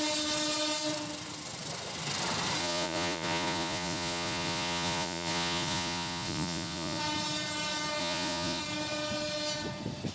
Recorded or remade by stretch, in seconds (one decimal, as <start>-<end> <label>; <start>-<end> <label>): 0.0-2.6 recorded; 2.6-7.0 remade; 7.0-8.0 recorded; 8.0-8.6 remade; 8.6-10.1 recorded